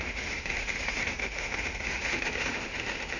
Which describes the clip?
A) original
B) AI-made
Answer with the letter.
B